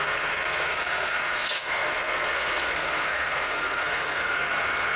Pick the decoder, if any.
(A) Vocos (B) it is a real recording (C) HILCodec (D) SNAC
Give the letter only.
D